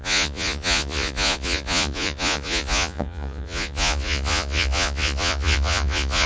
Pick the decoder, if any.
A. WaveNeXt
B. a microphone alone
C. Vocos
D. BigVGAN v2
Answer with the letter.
C